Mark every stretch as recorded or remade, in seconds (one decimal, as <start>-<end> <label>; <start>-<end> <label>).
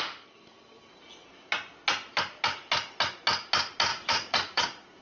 0.0-3.9 recorded; 3.9-5.0 remade